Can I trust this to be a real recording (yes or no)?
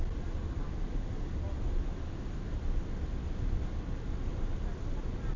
yes